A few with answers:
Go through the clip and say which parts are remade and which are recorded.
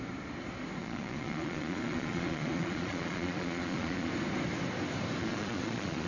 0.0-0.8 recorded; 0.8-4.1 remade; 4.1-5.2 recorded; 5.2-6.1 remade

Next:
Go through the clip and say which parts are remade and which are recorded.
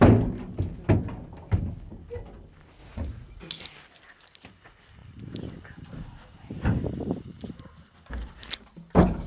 0.0-2.8 recorded; 2.8-3.5 remade; 3.5-9.3 recorded